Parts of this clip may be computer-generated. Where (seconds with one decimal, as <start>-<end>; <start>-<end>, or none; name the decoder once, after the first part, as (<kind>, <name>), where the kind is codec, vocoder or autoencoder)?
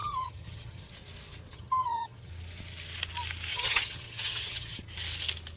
0.0-0.9 (vocoder, HiFi-GAN); 1.5-2.3; 3.5-4.8